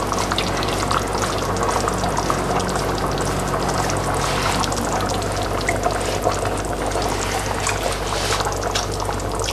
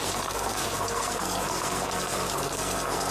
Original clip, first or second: first